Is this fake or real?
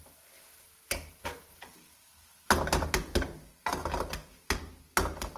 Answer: real